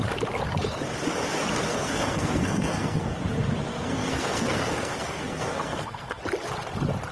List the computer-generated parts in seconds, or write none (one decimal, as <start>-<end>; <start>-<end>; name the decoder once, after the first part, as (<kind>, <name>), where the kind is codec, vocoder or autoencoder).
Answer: 1.7-3.2 (codec, SNAC); 3.7-6.2